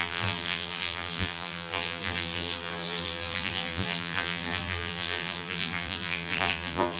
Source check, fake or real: fake